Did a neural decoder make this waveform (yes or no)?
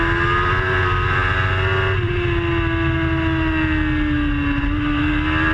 no